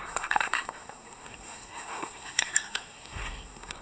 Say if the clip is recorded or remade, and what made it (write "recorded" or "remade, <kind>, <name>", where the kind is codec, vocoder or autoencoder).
remade, codec, SNAC